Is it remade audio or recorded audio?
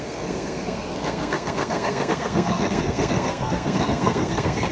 remade